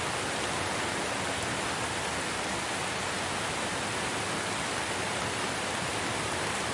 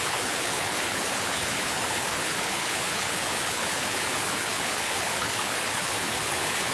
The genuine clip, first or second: first